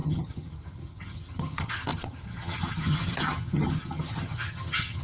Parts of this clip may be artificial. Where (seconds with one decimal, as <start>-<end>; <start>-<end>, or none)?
0.0-5.0